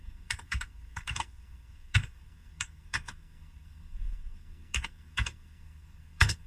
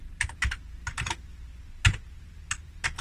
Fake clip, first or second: first